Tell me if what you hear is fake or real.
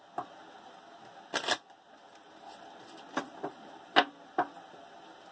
real